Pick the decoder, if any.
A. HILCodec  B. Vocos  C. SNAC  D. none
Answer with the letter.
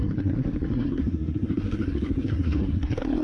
C